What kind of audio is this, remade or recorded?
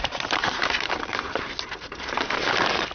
remade